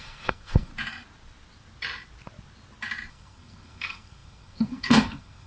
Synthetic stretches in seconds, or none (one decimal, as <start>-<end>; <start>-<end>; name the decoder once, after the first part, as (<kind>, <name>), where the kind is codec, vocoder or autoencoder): 0.0-0.7 (codec, SNAC); 3.1-5.5